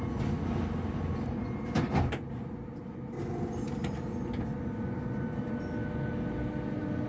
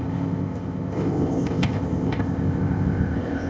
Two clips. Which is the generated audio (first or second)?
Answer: second